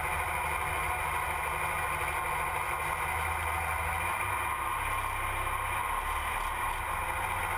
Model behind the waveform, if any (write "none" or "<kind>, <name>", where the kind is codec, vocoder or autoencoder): none